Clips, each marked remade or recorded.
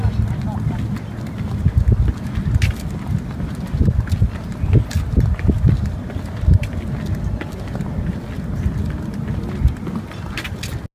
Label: recorded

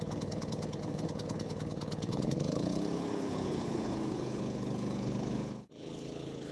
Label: remade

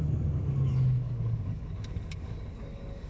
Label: remade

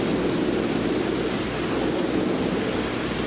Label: recorded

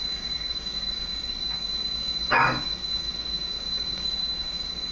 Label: remade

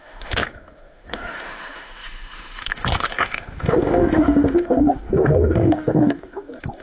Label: remade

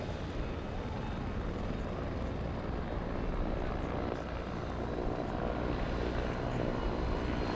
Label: recorded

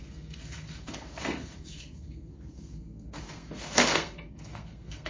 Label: remade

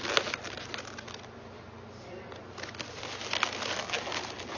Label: recorded